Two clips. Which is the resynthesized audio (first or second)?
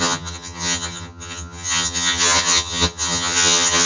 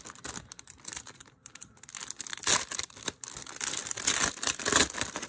first